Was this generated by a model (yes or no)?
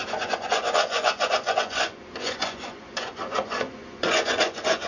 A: yes